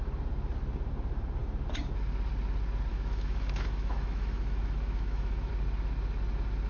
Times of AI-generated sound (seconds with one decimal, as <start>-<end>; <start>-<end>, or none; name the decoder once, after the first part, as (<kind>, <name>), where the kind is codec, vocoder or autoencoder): 2.9-5.5 (autoencoder, DAC-VAE)